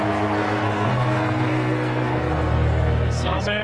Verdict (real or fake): fake